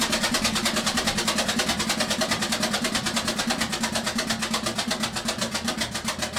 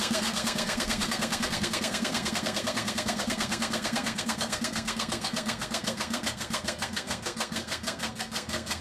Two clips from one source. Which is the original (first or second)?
first